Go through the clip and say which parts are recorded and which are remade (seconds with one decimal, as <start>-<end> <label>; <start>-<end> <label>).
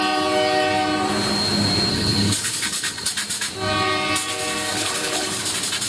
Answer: 0.0-1.9 recorded; 1.9-3.1 remade; 3.1-4.7 recorded; 4.7-5.4 remade; 5.4-5.9 recorded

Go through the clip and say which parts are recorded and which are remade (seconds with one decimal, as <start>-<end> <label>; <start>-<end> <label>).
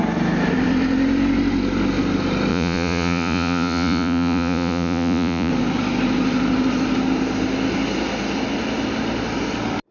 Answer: 0.0-2.5 recorded; 2.5-5.5 remade; 5.5-9.9 recorded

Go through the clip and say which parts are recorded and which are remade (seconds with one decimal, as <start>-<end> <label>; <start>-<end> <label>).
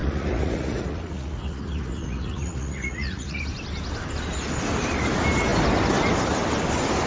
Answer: 0.0-3.4 remade; 3.4-7.1 recorded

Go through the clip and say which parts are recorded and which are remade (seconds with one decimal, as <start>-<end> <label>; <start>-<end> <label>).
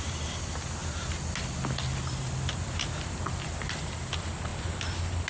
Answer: 0.0-5.3 recorded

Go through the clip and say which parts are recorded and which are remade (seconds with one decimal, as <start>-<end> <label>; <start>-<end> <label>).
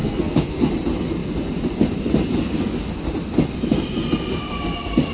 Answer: 0.0-0.7 remade; 0.7-5.1 recorded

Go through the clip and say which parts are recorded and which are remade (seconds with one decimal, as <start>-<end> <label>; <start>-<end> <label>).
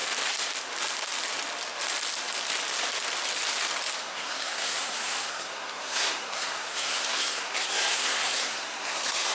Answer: 0.0-4.0 recorded; 4.0-9.3 remade